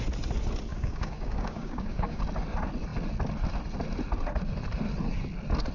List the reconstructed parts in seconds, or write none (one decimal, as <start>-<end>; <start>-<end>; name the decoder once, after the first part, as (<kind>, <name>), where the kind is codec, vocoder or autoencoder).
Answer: 0.7-2.2 (codec, DAC)